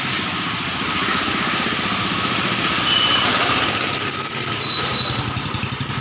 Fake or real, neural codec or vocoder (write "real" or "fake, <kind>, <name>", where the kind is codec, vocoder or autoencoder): fake, vocoder, BigVGAN v2